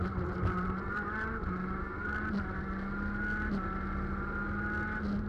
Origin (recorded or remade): recorded